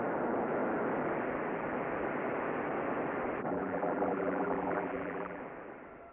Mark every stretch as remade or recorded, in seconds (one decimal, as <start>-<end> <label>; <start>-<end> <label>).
0.0-3.5 recorded; 3.5-5.4 remade; 5.4-6.1 recorded